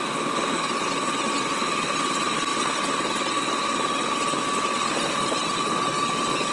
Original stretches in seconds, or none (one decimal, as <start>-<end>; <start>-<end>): 0.0-6.5